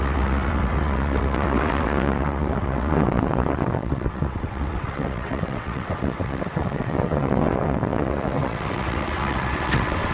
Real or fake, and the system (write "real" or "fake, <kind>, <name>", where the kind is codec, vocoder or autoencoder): fake, vocoder, WaveNeXt